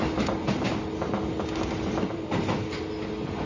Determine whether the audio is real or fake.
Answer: real